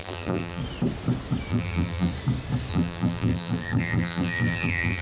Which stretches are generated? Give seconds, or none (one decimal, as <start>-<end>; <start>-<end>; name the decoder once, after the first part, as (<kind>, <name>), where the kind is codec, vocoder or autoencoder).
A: 0.0-0.6 (vocoder, BigVGAN v2); 1.5-2.1; 2.7-5.0